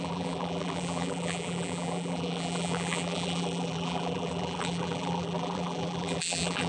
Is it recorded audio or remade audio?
remade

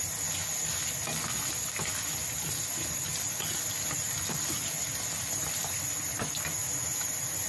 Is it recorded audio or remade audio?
recorded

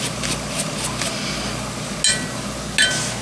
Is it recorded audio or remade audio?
recorded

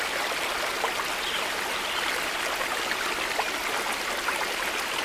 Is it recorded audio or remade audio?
recorded